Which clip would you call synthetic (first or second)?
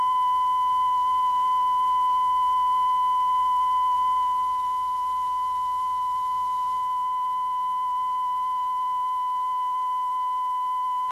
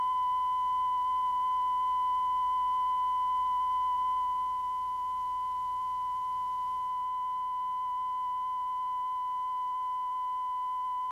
first